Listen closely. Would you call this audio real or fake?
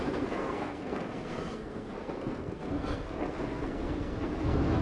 fake